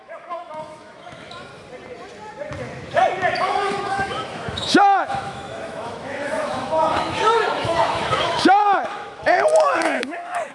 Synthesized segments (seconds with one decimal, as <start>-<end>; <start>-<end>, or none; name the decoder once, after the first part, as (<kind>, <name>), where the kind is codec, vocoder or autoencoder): 0.0-1.5 (autoencoder, DAC-VAE); 3.4-10.5